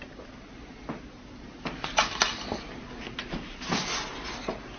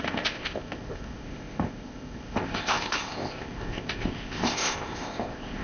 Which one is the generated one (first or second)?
second